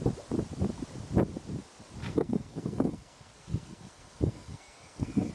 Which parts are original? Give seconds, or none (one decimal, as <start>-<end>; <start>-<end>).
0.0-2.0